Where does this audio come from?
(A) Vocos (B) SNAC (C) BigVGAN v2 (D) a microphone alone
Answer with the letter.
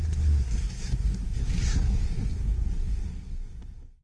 B